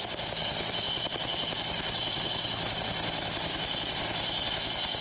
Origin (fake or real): real